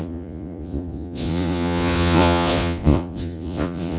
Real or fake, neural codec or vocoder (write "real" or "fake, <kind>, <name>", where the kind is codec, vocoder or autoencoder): fake, vocoder, Vocos